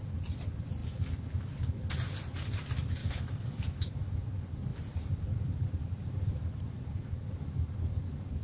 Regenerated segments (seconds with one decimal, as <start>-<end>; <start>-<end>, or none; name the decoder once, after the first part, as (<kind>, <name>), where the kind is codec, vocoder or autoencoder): 3.0-4.2 (autoencoder, DAC-VAE)